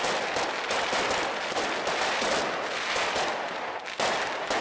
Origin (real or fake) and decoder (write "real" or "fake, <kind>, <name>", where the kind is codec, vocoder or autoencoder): real